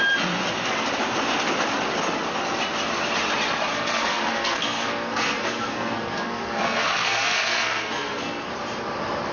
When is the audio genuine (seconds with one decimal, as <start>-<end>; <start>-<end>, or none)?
0.0-3.7; 8.5-9.3